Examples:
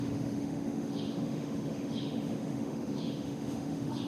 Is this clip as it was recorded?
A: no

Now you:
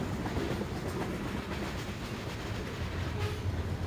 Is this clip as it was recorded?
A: yes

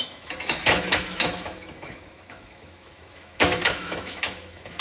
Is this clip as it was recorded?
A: no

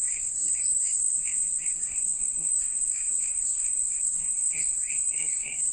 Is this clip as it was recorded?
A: no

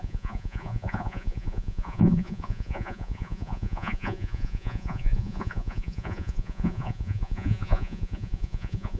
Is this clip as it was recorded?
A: no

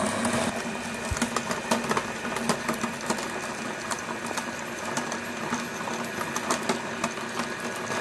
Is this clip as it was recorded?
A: yes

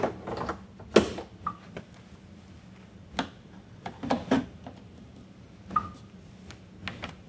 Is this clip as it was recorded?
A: yes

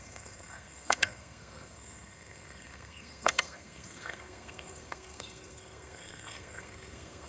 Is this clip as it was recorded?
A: no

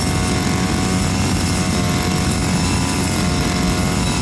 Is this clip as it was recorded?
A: yes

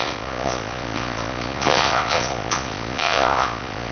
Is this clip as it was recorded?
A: no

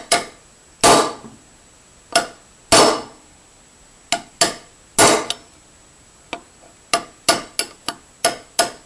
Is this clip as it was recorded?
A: yes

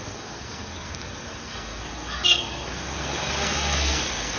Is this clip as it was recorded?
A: no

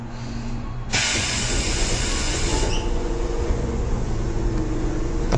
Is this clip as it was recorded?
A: no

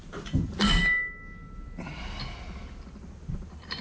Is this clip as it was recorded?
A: yes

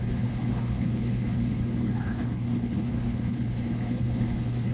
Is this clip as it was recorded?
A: no